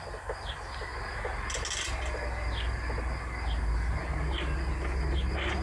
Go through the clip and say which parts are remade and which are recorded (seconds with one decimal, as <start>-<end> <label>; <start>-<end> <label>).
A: 0.0-5.6 recorded